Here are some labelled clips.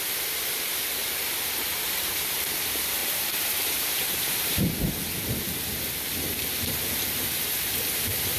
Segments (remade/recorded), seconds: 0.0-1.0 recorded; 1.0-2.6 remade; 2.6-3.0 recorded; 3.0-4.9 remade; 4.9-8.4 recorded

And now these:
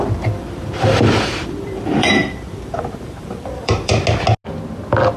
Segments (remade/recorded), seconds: 0.0-3.9 remade; 3.9-5.2 recorded

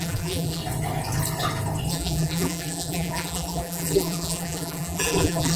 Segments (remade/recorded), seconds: 0.0-0.6 remade; 0.6-1.9 recorded; 1.9-5.6 remade